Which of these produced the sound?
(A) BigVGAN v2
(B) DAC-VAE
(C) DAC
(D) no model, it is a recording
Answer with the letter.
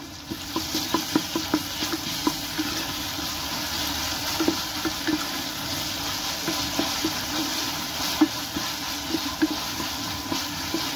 D